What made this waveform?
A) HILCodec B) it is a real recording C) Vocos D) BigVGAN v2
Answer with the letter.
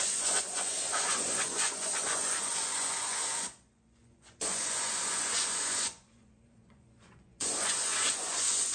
C